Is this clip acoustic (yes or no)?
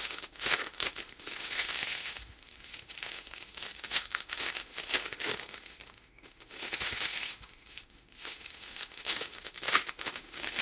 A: no